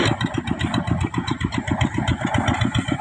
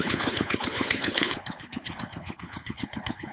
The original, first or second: first